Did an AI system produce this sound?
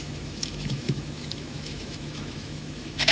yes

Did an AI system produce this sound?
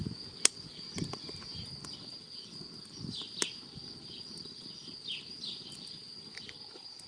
no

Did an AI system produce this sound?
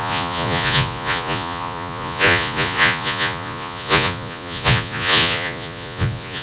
yes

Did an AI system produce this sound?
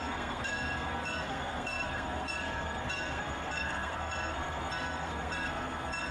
yes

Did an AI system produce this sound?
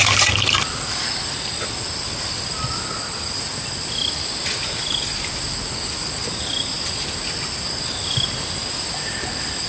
no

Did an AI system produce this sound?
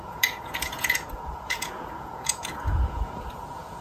yes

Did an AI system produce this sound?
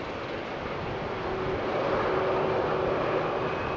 no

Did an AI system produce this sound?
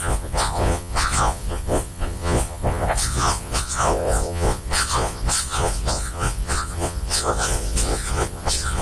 yes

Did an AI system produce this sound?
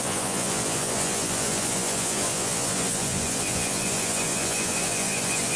yes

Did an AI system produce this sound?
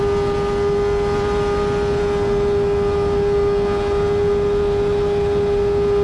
no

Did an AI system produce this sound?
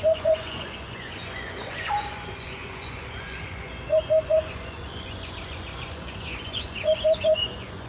yes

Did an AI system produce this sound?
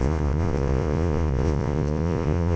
yes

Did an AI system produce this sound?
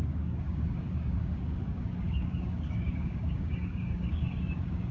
yes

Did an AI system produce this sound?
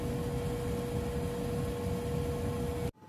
no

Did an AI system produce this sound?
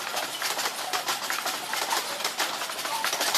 yes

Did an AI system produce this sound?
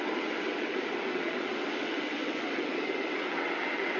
yes